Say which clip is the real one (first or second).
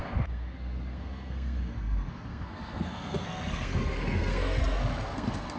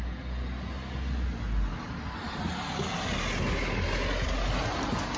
second